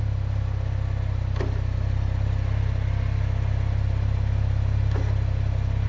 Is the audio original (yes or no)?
yes